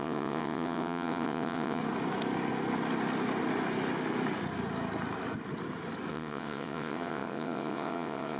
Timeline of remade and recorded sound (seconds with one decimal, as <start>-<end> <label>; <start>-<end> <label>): 0.0-1.8 remade; 1.8-6.1 recorded; 6.1-8.4 remade